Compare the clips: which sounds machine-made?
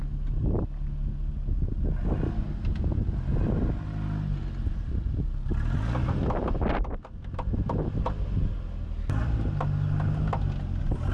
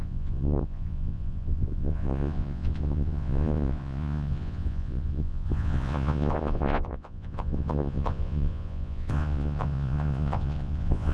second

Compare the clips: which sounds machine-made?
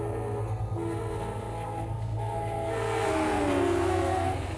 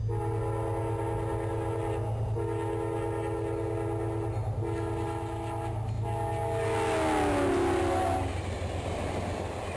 first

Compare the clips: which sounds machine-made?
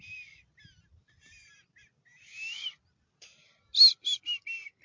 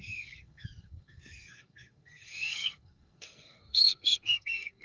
second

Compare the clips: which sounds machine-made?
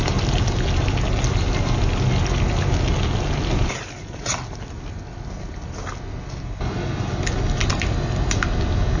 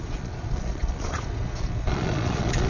second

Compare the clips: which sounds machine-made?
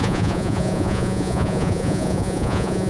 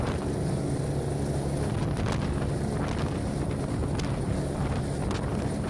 first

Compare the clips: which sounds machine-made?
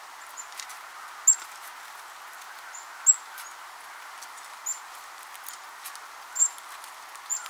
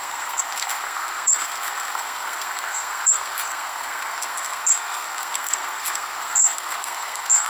second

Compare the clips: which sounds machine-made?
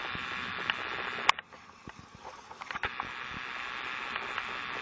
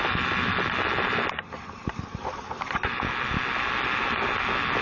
second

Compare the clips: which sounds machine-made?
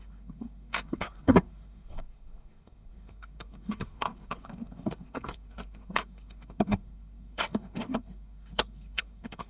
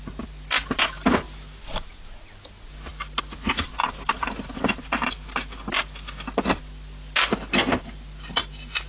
first